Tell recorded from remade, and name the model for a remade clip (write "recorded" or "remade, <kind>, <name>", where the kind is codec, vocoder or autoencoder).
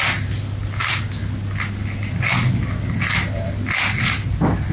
recorded